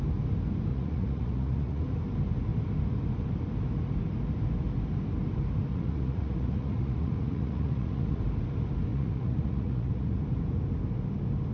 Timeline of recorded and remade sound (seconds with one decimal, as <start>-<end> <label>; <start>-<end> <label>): 0.0-0.7 recorded; 0.7-1.8 remade; 1.8-5.7 recorded; 5.7-8.2 remade; 8.2-8.9 recorded; 8.9-10.2 remade; 10.2-11.5 recorded